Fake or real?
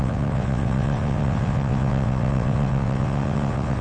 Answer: fake